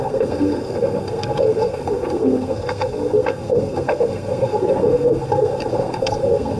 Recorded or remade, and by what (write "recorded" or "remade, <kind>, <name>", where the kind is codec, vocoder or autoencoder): remade, codec, SNAC